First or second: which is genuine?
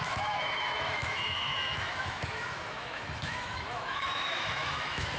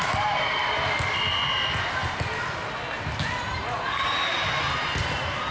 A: second